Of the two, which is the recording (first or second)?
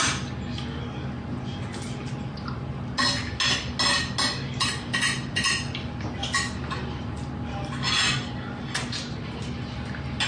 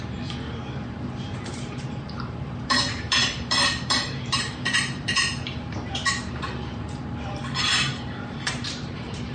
first